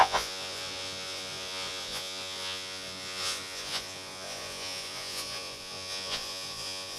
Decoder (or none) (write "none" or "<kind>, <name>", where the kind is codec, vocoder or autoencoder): vocoder, Vocos